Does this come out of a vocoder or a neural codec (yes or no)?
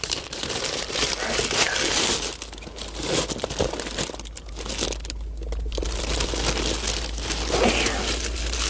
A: no